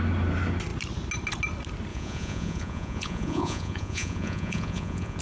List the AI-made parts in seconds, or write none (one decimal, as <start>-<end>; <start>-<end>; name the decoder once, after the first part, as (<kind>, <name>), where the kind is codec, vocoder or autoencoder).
1.9-5.2 (vocoder, Vocos)